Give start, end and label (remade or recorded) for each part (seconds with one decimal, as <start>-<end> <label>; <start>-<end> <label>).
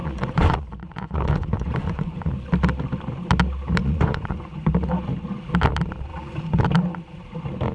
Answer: 0.0-2.3 remade; 2.3-3.8 recorded; 3.8-4.7 remade; 4.7-6.1 recorded; 6.1-6.6 remade; 6.6-7.7 recorded